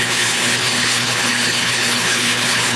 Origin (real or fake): fake